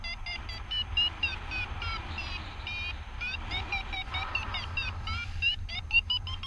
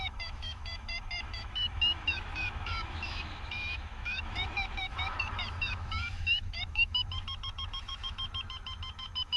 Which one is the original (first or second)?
first